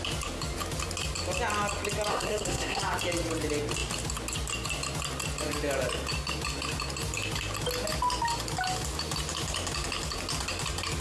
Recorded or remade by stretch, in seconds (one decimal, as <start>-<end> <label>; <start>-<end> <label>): 0.0-2.1 recorded; 2.1-2.8 remade; 2.8-11.0 recorded

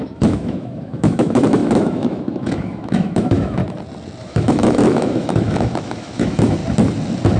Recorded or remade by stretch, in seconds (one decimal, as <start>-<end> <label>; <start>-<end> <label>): 0.0-3.6 remade; 3.6-4.2 recorded; 4.2-6.6 remade; 6.6-7.4 recorded

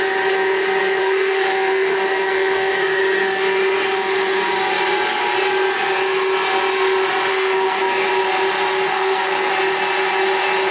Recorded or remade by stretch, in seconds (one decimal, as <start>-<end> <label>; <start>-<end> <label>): 0.0-1.0 recorded; 1.0-3.0 remade; 3.0-7.3 recorded; 7.3-8.1 remade; 8.1-8.9 recorded; 8.9-9.5 remade; 9.5-10.7 recorded

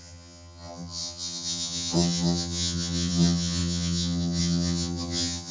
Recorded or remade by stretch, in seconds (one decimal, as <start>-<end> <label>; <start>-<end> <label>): 0.0-5.5 remade

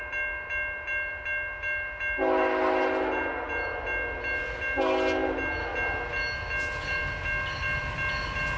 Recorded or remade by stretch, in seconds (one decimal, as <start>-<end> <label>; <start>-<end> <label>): 0.0-8.6 recorded

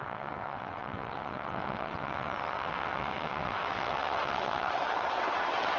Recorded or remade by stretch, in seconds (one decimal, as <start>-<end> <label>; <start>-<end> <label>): 0.0-5.8 remade